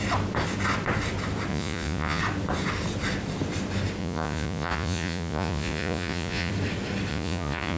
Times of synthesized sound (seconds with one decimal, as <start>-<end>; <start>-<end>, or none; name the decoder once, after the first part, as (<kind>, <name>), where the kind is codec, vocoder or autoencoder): 1.5-2.2 (vocoder, Vocos); 4.0-6.5; 7.1-7.8